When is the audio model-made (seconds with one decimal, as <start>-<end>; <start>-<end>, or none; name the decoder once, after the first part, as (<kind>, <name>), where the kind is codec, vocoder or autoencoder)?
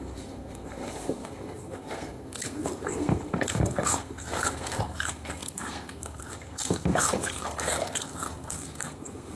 0.0-9.4 (codec, SNAC)